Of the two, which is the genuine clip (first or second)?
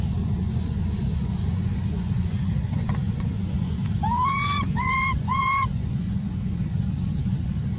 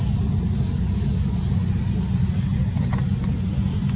second